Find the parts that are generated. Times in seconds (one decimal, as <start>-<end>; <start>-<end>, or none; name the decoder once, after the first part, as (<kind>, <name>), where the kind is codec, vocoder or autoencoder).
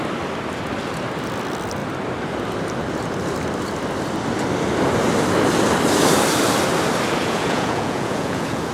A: 7.2-8.7 (vocoder, Vocos)